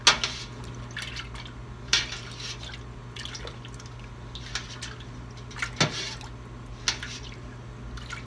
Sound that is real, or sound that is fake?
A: real